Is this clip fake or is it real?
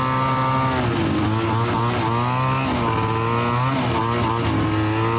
real